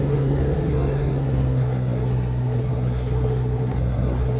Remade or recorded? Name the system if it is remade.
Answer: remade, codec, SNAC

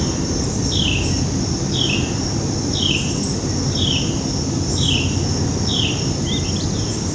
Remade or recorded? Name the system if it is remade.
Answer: recorded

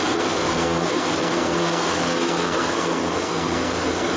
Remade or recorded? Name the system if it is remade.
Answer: remade, codec, SNAC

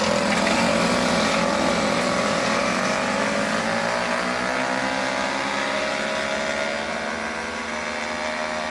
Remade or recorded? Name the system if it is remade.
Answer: recorded